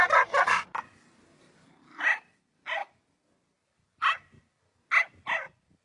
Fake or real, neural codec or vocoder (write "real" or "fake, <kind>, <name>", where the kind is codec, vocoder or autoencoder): real